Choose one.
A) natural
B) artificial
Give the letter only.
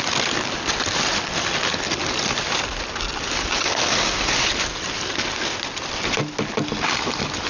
A